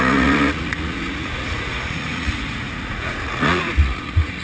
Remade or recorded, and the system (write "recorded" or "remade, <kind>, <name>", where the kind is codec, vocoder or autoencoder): remade, vocoder, Vocos